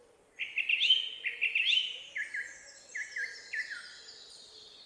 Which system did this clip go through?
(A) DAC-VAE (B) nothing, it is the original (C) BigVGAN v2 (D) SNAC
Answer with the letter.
B